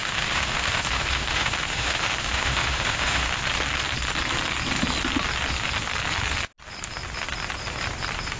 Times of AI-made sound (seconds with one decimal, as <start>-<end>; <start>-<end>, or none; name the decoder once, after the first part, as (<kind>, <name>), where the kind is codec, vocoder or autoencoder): 0.0-3.4 (autoencoder, DAC-VAE)